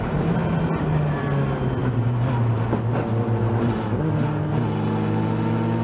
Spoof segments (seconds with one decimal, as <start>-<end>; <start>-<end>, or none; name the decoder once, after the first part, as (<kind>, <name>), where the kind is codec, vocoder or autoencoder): none

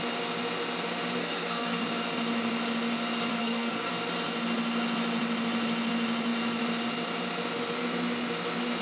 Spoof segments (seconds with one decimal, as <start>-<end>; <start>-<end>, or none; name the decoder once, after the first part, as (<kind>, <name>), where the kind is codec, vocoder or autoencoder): 1.2-1.8 (codec, SNAC); 3.4-3.9

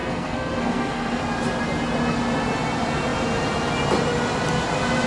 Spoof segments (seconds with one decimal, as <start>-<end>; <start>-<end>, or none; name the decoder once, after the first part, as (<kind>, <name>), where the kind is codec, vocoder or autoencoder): 0.0-1.2 (codec, SNAC)

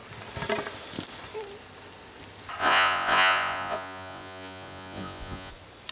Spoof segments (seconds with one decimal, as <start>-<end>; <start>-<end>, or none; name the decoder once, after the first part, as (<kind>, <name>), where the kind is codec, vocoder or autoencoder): 2.6-5.5 (vocoder, Vocos)

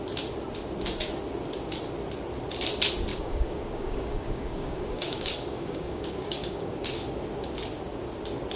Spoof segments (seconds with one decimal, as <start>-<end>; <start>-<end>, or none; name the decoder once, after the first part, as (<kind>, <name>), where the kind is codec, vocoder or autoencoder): 3.1-7.1 (codec, DAC)

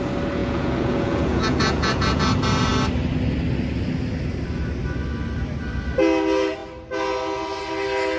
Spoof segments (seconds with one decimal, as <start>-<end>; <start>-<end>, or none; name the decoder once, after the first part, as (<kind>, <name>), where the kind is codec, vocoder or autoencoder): 0.4-2.2 (vocoder, Vocos)

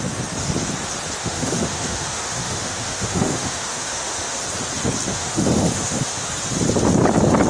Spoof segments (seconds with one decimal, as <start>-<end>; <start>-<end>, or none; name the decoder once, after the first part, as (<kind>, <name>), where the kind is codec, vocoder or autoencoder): 1.2-4.4 (autoencoder, DAC-VAE); 5.1-6.3

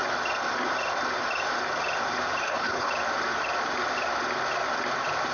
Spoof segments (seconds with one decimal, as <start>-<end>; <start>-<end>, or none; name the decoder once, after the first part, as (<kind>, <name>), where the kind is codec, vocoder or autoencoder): 2.4-2.9 (codec, HILCodec)